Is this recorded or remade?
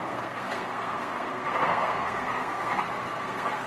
remade